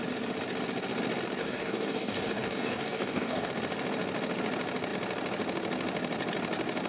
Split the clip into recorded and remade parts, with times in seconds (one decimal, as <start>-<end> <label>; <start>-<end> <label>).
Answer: 0.0-1.4 recorded; 1.4-3.5 remade; 3.5-6.9 recorded